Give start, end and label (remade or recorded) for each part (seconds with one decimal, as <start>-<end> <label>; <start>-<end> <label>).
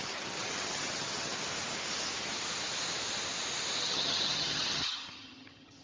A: 0.0-1.3 remade; 1.3-3.8 recorded; 3.8-5.8 remade